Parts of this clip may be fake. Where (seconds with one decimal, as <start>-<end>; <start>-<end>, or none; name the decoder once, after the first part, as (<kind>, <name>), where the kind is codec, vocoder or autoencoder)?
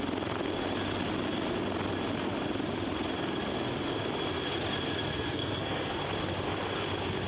5.1-6.0 (codec, SNAC)